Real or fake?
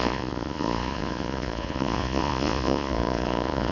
fake